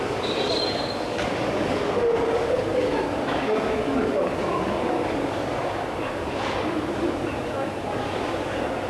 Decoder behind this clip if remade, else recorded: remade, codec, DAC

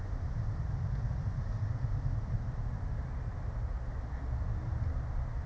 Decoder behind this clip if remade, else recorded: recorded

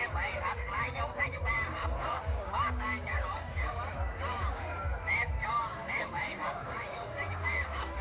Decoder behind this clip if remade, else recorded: remade, codec, DAC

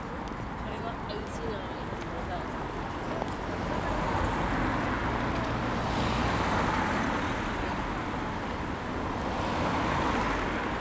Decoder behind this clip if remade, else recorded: recorded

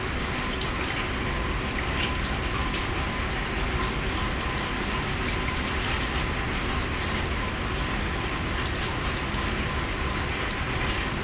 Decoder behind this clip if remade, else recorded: recorded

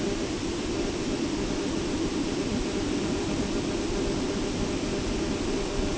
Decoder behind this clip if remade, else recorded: recorded